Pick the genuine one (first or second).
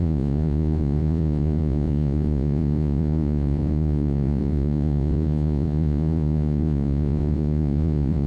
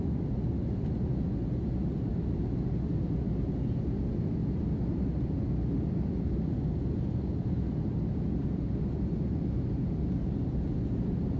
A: second